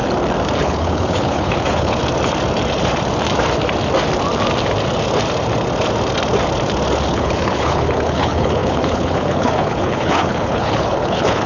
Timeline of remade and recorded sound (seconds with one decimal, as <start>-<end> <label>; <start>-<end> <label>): 0.0-0.6 recorded; 0.6-2.0 remade; 2.0-7.1 recorded; 7.1-11.5 remade